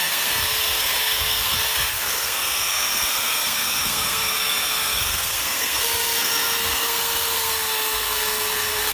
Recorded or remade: remade